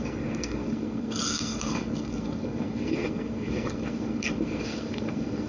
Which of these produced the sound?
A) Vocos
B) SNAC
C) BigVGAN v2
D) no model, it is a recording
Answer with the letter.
B